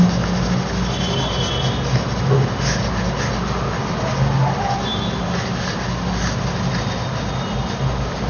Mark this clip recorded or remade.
recorded